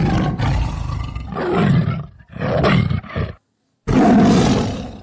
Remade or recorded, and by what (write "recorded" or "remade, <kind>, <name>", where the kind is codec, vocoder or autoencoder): recorded